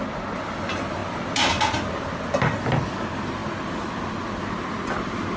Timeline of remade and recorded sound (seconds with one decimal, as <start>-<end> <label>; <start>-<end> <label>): 0.0-5.4 recorded